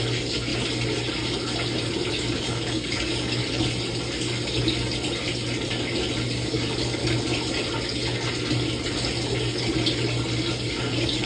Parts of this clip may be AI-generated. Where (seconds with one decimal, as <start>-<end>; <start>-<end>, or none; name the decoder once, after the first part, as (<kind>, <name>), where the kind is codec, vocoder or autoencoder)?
0.0-0.5 (codec, DAC); 2.1-3.4; 6.3-7.0; 10.7-11.3